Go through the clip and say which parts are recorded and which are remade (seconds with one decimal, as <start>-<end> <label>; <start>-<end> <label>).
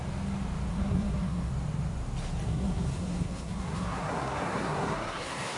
0.0-0.7 recorded; 0.7-1.5 remade; 1.5-2.4 recorded; 2.4-5.6 remade